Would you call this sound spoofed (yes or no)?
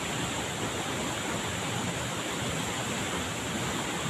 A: no